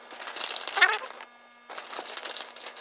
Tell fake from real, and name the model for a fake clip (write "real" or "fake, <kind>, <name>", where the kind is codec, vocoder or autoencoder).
real